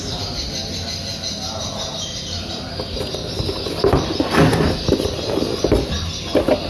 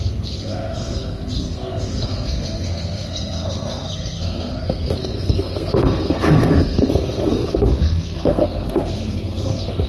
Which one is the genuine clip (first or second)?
first